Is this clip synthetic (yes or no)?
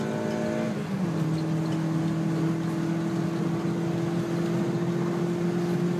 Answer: no